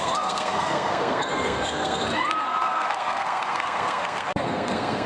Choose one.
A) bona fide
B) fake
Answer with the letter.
B